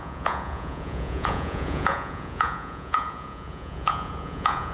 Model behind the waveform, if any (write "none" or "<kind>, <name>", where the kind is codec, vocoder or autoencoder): vocoder, Vocos